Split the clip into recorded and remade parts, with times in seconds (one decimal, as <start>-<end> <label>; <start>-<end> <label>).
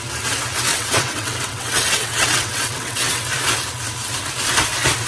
0.0-0.7 recorded; 0.7-3.2 remade; 3.2-5.1 recorded